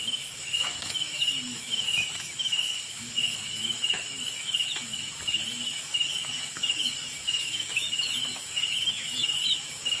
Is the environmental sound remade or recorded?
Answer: remade